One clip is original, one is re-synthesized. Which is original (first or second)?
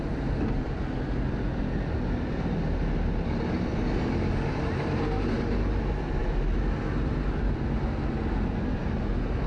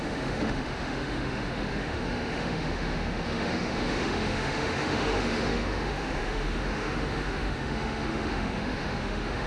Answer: first